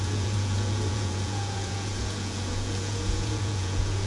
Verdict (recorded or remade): remade